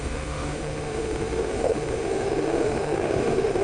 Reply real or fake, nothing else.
fake